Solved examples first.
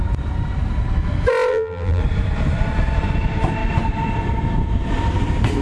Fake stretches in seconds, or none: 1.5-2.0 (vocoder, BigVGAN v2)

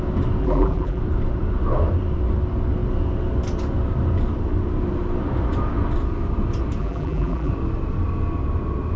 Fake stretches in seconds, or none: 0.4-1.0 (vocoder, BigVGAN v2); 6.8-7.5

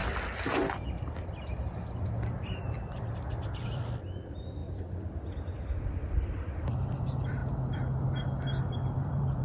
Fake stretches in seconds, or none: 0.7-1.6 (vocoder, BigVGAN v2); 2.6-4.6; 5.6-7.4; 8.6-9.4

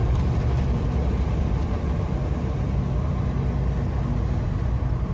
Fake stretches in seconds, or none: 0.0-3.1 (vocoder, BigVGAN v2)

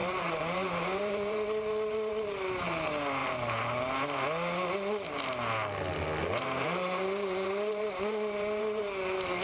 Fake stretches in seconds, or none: 0.0-2.1 (vocoder, BigVGAN v2); 6.2-8.8

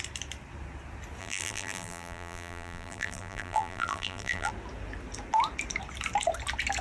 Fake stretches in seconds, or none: 1.2-4.5 (vocoder, BigVGAN v2)